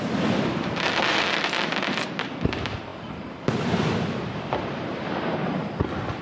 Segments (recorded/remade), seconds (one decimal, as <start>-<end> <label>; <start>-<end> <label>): 0.0-6.2 remade